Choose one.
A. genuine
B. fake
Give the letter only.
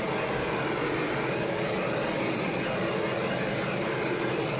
A